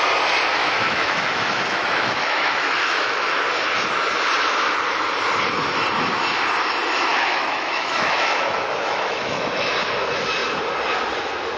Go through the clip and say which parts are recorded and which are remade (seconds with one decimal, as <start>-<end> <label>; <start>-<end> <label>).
0.0-0.6 recorded; 0.6-3.4 remade; 3.4-7.1 recorded; 7.1-9.7 remade; 9.7-11.6 recorded